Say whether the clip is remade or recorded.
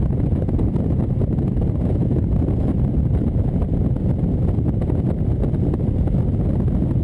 recorded